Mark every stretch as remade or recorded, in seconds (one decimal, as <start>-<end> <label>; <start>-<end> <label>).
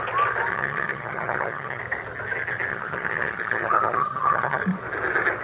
0.0-0.5 recorded; 0.5-1.8 remade; 1.8-2.7 recorded; 2.7-4.6 remade; 4.6-5.4 recorded